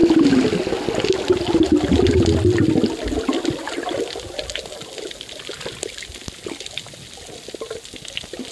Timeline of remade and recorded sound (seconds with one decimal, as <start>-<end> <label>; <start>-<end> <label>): 0.0-8.5 recorded